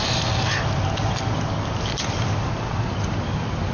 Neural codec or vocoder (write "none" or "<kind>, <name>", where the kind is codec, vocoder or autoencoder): none